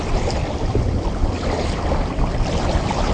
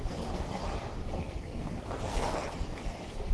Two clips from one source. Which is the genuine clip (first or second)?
first